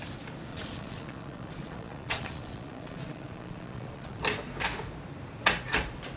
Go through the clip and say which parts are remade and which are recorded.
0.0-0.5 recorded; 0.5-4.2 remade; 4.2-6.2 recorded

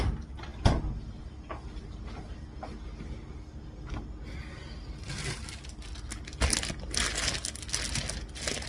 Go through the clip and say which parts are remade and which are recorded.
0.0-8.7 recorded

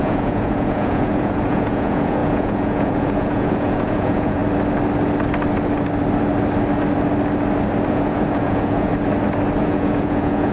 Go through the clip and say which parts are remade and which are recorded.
0.0-4.4 remade; 4.4-7.9 recorded; 7.9-8.9 remade; 8.9-9.6 recorded; 9.6-10.5 remade

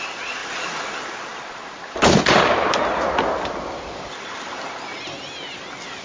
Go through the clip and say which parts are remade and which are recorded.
0.0-6.0 recorded

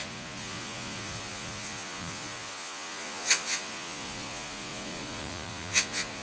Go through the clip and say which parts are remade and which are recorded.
0.0-6.2 remade

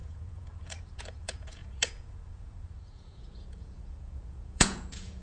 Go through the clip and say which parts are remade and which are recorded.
0.0-5.2 remade

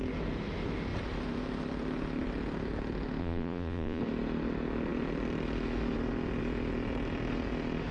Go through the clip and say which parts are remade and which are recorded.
0.0-3.2 recorded; 3.2-4.0 remade; 4.0-7.9 recorded

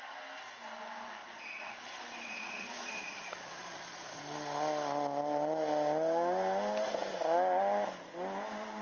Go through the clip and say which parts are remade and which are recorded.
0.0-1.2 recorded; 1.2-4.2 remade; 4.2-8.8 recorded